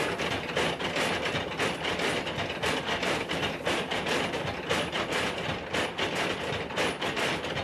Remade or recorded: recorded